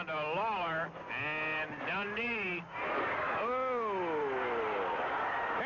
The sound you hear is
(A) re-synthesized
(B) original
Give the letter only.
B